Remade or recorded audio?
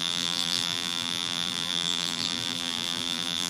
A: remade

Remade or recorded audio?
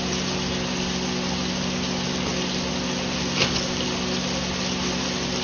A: recorded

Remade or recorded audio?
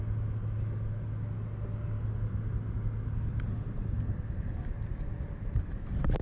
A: recorded